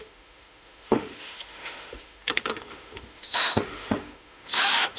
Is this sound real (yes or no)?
no